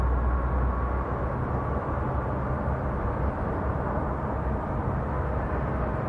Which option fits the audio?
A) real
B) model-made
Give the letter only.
A